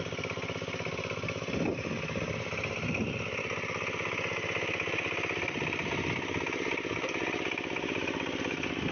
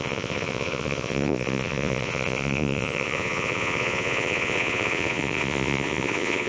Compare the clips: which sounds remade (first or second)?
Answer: second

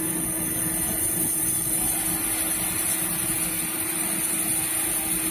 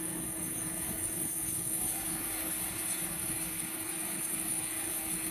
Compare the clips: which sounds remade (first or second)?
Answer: second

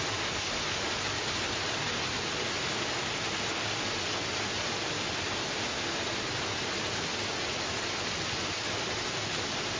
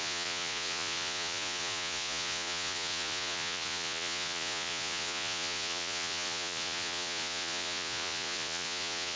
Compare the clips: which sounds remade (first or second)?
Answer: second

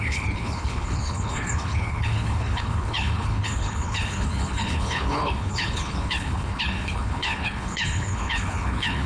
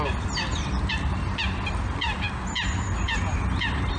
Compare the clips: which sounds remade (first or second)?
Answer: first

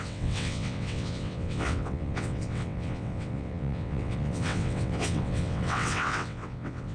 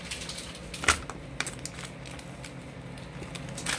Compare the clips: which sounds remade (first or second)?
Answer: first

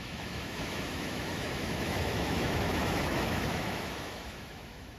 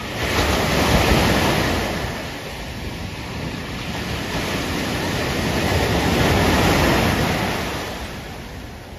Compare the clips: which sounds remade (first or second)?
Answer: first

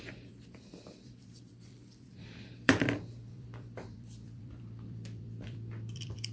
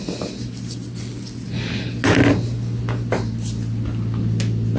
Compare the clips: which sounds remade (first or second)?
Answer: first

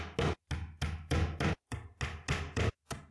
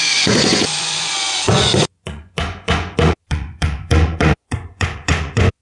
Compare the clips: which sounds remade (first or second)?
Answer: second